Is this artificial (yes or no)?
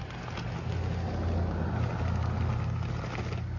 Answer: no